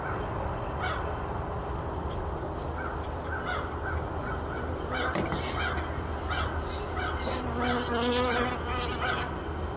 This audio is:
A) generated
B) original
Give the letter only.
B